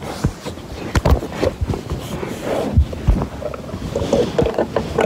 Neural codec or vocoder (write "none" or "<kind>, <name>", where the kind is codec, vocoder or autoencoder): none